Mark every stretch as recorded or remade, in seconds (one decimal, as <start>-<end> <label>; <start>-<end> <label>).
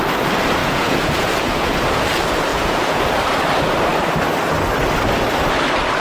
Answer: 0.0-0.6 recorded; 0.6-1.8 remade; 1.8-2.5 recorded; 2.5-3.0 remade; 3.0-6.0 recorded